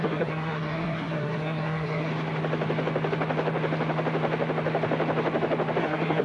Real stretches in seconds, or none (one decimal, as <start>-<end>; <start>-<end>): 2.1-5.8